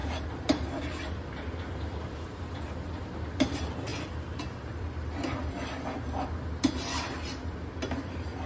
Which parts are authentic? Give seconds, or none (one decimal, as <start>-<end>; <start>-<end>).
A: 0.0-8.5

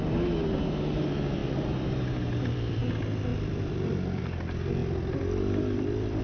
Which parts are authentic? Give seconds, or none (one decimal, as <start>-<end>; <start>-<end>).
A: 0.0-1.4; 2.8-3.3; 4.2-4.8